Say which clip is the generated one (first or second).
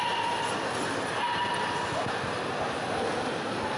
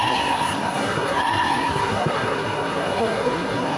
second